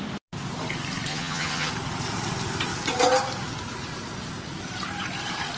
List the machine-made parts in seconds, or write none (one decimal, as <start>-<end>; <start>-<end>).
1.1-1.7